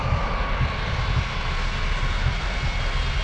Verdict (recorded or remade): recorded